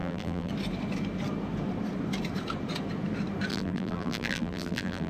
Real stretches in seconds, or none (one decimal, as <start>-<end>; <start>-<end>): 0.5-3.5